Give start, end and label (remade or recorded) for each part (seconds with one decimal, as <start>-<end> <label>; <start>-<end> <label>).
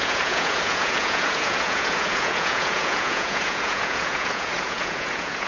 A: 0.0-5.5 remade